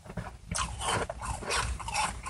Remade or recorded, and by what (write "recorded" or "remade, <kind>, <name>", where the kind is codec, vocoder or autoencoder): remade, vocoder, BigVGAN v2